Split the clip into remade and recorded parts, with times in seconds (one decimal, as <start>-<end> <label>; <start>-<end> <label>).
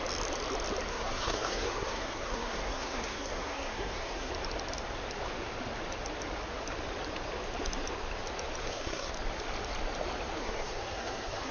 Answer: 0.0-0.9 recorded; 0.9-4.3 remade; 4.3-8.6 recorded; 8.6-9.1 remade; 9.1-10.4 recorded; 10.4-11.5 remade